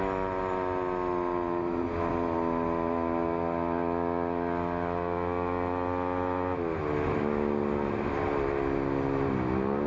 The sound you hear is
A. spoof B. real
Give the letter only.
B